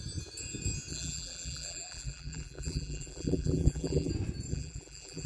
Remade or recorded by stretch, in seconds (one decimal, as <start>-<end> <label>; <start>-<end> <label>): 0.0-0.9 recorded; 0.9-4.1 remade; 4.1-4.5 recorded; 4.5-5.3 remade